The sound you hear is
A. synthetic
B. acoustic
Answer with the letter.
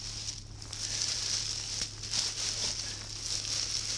B